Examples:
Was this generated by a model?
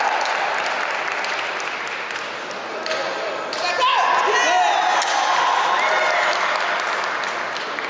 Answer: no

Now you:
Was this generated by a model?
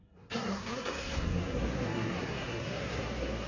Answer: yes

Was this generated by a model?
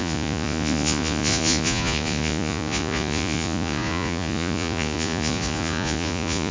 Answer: yes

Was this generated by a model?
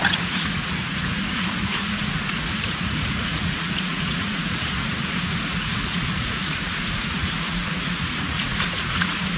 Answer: yes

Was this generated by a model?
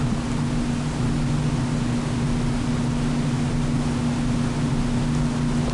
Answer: no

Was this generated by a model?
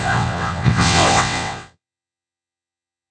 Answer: yes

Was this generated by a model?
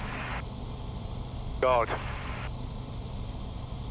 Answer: no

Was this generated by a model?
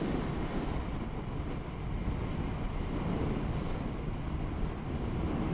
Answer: no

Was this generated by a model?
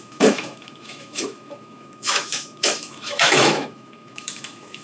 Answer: yes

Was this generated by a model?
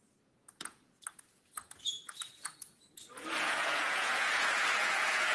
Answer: yes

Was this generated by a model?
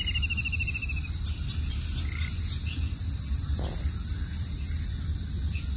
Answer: no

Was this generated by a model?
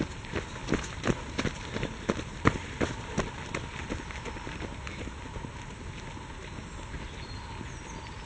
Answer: no